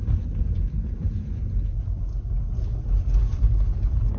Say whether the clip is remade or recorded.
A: recorded